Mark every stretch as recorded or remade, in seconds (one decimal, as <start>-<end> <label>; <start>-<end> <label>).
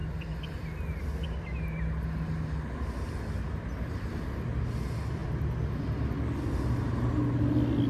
0.0-7.9 recorded